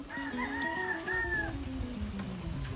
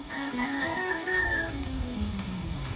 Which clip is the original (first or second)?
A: first